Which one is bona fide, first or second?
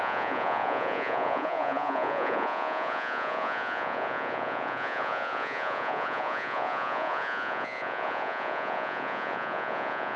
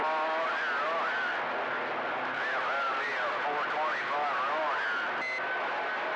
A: second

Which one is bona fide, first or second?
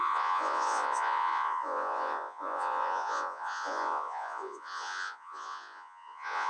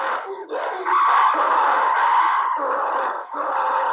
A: second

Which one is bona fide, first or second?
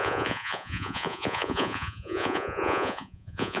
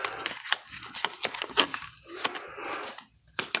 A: second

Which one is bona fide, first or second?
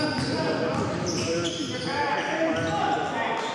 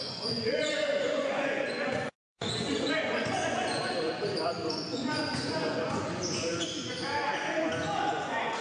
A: first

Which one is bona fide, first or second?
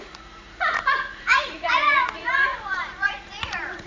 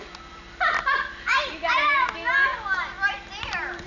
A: second